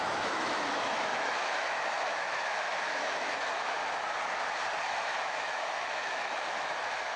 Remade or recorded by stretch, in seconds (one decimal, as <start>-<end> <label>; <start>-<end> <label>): 0.0-3.8 remade; 3.8-4.8 recorded; 4.8-7.2 remade